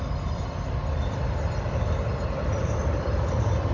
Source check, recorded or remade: recorded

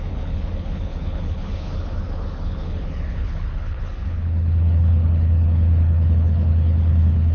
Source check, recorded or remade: remade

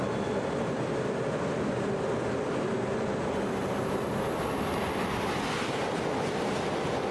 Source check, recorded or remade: recorded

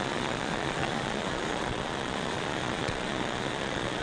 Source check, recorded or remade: remade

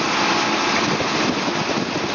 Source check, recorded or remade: recorded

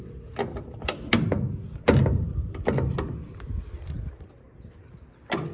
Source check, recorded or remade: recorded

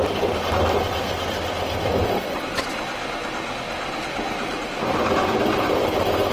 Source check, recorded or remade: recorded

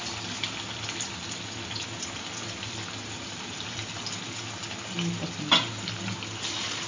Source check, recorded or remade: recorded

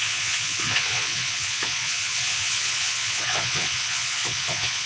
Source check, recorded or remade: remade